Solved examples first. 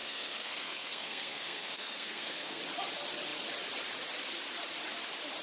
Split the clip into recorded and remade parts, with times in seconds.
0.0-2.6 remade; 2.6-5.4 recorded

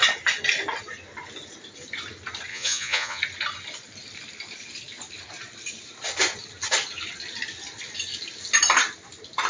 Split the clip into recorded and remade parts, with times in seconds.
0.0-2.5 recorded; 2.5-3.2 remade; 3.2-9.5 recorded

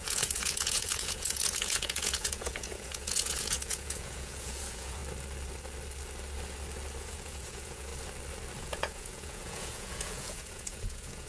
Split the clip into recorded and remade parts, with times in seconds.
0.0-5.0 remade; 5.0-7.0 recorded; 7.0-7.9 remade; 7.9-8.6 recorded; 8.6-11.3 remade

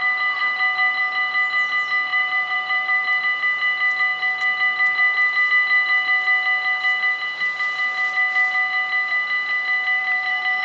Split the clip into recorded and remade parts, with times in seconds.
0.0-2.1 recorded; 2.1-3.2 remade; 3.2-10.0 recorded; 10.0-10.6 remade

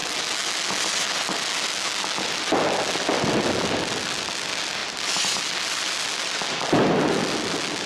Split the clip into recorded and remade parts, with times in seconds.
0.0-7.9 recorded

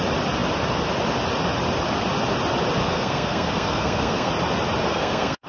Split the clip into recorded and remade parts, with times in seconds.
0.0-2.8 recorded; 2.8-4.3 remade; 4.3-4.8 recorded; 4.8-5.5 remade

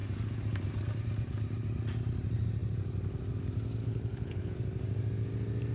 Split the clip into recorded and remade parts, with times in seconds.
0.0-3.8 recorded; 3.8-4.5 remade; 4.5-5.7 recorded

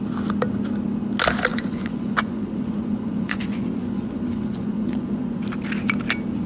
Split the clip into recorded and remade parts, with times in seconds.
0.0-1.5 recorded; 1.5-5.4 remade; 5.4-6.5 recorded